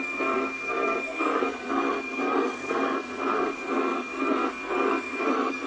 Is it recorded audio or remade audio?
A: remade